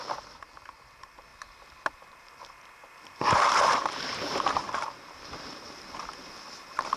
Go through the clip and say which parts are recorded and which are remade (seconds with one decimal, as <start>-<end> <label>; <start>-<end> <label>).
0.0-7.0 remade